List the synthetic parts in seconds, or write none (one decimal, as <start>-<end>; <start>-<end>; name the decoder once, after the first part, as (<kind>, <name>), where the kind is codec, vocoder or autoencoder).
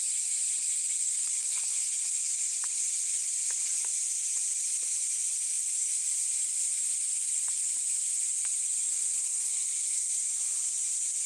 1.0-1.8 (codec, SNAC); 9.2-10.1